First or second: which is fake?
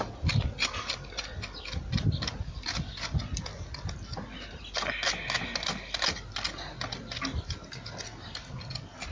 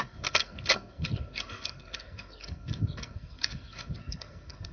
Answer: second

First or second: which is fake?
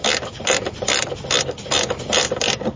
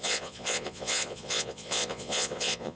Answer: second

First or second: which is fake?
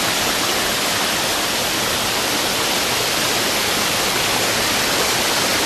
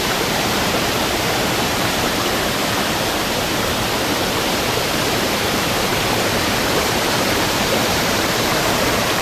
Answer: second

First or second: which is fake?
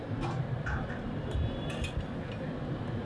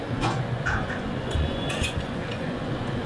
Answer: second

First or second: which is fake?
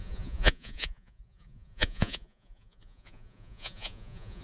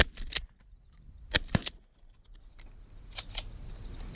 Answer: first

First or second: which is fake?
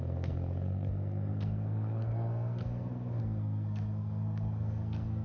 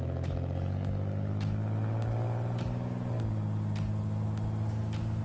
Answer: first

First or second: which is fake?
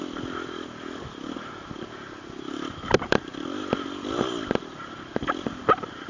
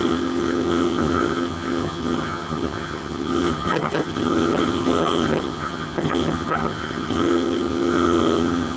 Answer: second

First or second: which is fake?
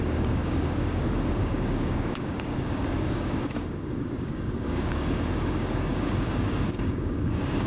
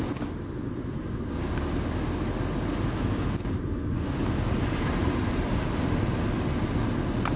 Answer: first